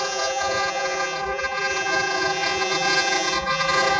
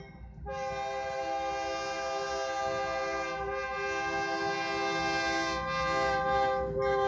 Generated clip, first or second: first